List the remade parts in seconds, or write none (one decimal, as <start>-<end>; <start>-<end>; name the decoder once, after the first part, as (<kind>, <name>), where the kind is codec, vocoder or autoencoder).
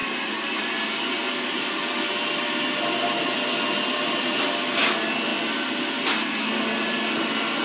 none